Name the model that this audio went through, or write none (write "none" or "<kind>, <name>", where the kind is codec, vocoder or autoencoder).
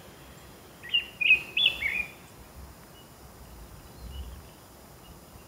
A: none